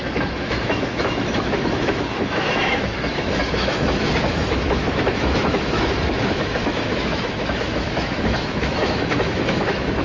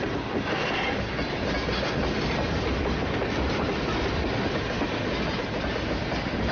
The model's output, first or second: first